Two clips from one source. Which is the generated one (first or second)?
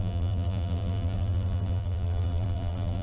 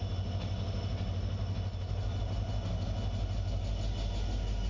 first